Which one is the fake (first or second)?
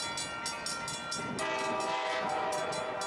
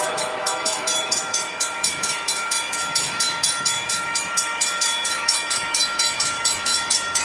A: second